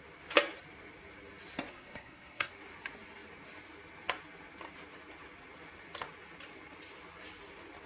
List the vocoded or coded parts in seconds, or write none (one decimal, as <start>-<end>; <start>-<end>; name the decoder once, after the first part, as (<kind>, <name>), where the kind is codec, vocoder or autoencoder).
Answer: 1.7-2.5 (codec, SNAC)